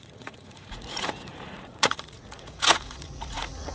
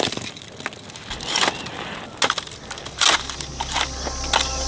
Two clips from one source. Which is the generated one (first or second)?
first